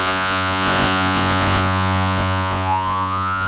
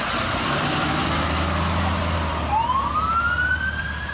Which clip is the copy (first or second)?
first